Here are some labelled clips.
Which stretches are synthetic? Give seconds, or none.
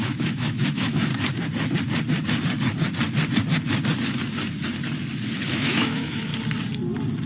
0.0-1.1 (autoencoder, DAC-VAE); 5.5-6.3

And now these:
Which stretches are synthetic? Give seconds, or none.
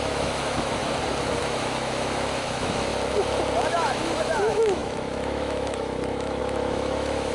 0.0-0.8 (autoencoder, DAC-VAE); 1.4-2.9; 3.7-7.3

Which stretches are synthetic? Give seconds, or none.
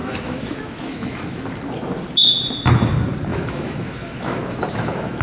0.0-1.4 (autoencoder, DAC-VAE); 3.3-5.2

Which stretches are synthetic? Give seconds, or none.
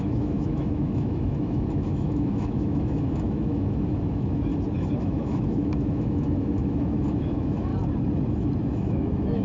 0.0-4.5 (autoencoder, DAC-VAE); 5.0-7.7; 8.6-9.4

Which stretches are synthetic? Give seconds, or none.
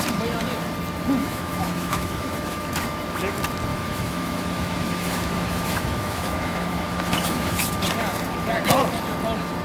1.2-2.6 (autoencoder, DAC-VAE); 3.7-7.8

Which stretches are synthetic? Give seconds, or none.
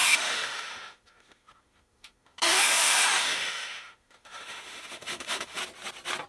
0.0-5.6 (autoencoder, DAC-VAE)